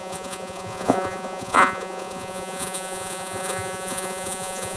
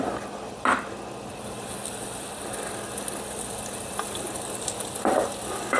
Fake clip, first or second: first